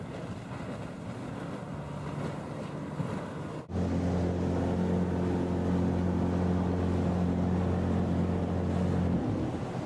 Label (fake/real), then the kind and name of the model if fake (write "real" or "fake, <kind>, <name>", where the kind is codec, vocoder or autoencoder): real